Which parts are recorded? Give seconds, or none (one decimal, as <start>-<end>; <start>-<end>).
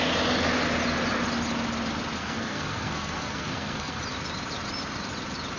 0.0-2.2; 4.0-5.6